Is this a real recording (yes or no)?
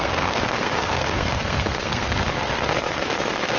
no